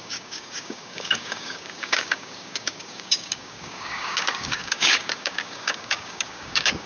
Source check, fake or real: fake